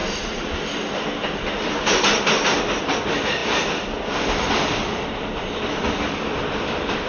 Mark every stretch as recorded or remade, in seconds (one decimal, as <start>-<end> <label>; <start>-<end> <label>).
0.0-2.7 recorded; 2.7-7.1 remade